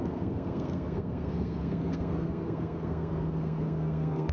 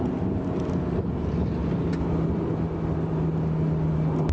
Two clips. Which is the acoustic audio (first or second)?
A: second